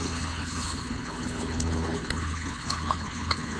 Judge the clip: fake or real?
fake